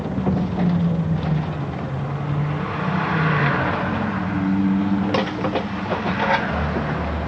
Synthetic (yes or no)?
no